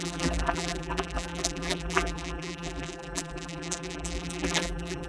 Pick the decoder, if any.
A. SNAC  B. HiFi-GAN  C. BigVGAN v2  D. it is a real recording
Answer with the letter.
C